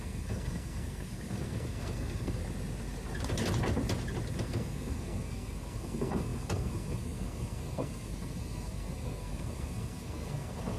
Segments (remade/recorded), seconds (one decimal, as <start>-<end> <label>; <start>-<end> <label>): 0.0-2.4 remade; 2.4-4.4 recorded; 4.4-10.8 remade